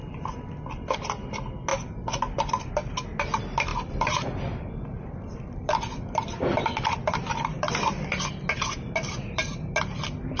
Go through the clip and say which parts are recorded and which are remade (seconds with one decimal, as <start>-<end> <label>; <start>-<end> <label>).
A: 0.0-1.7 recorded; 1.7-2.7 remade; 2.7-3.7 recorded; 3.7-8.2 remade; 8.2-10.4 recorded